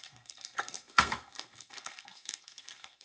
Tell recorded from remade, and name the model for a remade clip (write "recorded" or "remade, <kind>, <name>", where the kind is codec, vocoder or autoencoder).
remade, codec, SNAC